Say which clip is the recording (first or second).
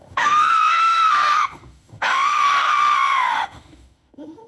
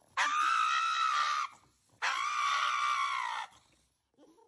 second